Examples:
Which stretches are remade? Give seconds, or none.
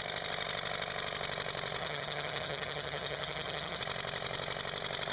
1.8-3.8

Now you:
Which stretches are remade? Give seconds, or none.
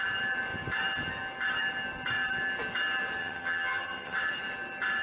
3.2-4.3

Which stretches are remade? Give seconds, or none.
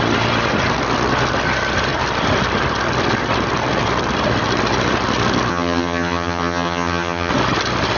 5.5-7.3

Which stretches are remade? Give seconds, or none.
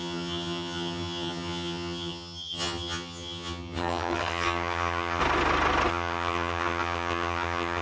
0.0-5.2; 5.9-7.8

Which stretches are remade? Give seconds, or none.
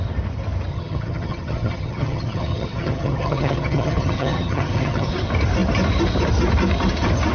0.7-5.1